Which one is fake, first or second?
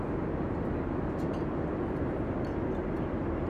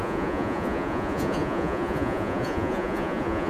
second